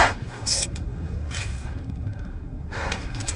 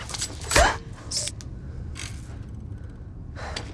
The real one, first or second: second